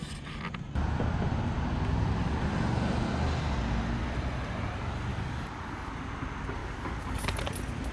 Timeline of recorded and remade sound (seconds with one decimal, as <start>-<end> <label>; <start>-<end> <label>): 0.0-5.1 recorded; 5.1-5.9 remade; 5.9-6.6 recorded; 6.6-7.4 remade; 7.4-7.9 recorded